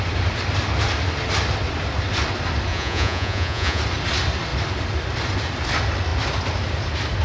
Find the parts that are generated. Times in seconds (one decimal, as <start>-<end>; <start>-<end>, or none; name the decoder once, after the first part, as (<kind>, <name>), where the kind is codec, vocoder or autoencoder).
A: 2.7-3.8 (vocoder, Vocos)